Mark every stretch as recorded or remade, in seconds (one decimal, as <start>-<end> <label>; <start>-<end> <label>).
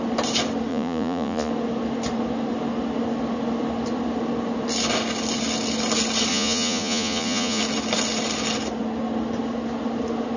0.0-0.7 recorded; 0.7-1.5 remade; 1.5-6.3 recorded; 6.3-7.6 remade; 7.6-10.4 recorded